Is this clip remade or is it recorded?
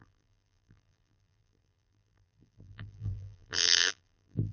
remade